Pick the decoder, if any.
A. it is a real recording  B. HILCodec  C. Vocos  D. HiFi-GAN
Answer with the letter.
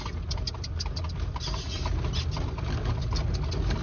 A